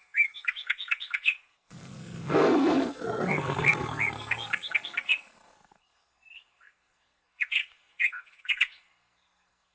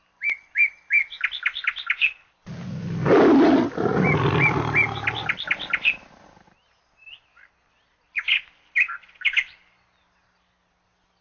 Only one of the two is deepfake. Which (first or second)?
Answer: first